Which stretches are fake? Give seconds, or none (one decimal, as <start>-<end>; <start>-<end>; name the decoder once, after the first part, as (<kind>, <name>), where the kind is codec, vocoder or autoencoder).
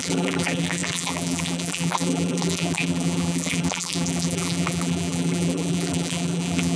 0.0-6.8 (vocoder, BigVGAN v2)